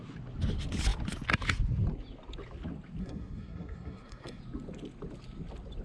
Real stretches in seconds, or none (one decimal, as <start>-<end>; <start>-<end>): 0.0-3.0; 4.4-5.8